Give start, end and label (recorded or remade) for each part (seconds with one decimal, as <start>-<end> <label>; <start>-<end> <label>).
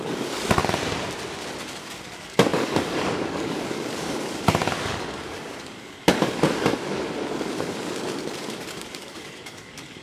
0.0-0.6 remade; 0.6-1.7 recorded; 1.7-10.0 remade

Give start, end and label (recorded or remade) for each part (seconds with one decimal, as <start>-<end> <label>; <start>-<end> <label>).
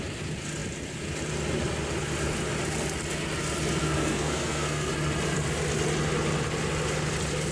0.0-3.8 recorded; 3.8-4.9 remade; 4.9-7.5 recorded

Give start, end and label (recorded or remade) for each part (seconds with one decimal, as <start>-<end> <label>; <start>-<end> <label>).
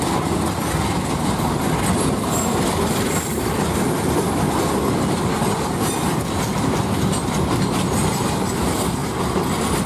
0.0-9.9 recorded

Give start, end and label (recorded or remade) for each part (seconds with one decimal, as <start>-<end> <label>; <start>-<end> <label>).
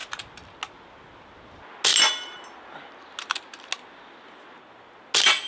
0.0-5.5 recorded